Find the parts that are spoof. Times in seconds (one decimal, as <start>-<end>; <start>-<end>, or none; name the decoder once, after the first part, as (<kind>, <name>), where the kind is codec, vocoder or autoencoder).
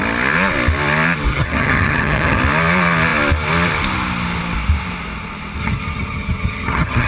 1.3-2.4 (vocoder, HiFi-GAN); 5.6-7.1